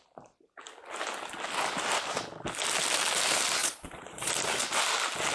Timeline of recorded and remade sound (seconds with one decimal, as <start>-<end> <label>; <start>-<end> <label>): 0.0-3.6 recorded; 3.6-4.3 remade; 4.3-5.3 recorded